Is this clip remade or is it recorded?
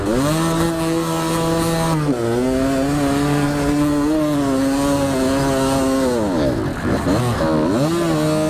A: recorded